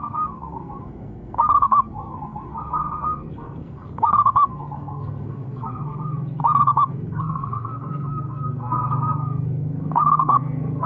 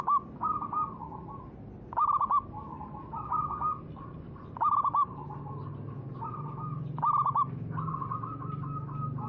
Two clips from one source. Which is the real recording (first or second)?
second